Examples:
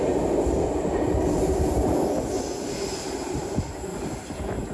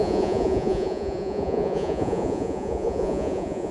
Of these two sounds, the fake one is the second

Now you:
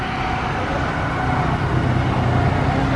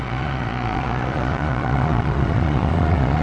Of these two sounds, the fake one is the second